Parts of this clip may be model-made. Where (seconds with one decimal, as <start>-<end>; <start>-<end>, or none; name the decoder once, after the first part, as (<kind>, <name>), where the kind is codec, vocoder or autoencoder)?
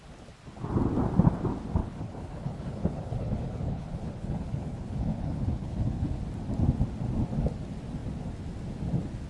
1.8-6.2 (codec, HILCodec)